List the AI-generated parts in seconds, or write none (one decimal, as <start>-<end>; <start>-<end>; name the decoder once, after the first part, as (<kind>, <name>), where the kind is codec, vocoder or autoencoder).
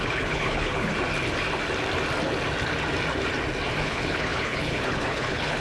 0.0-0.9 (codec, HILCodec); 3.8-5.6